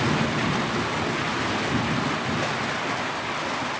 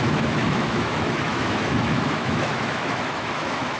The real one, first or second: first